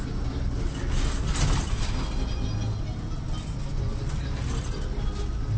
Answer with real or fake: real